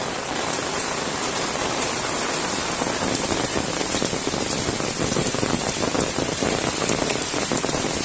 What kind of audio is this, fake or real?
real